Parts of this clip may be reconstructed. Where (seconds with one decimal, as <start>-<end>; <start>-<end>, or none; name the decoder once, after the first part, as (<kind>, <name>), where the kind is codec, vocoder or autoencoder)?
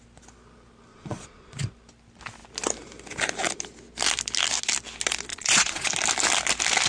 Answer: 0.9-1.7 (vocoder, Vocos); 5.3-5.9